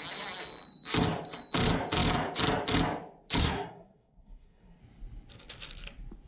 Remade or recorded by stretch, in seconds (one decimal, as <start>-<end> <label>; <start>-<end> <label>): 0.0-3.4 recorded; 3.4-4.8 remade; 4.8-6.3 recorded